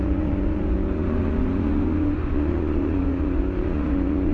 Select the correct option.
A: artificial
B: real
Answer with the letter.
A